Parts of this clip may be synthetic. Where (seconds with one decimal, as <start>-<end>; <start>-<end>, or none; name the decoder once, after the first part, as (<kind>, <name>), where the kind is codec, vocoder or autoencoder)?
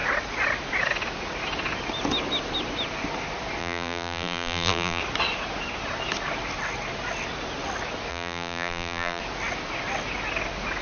3.6-5.0 (vocoder, BigVGAN v2); 8.1-9.2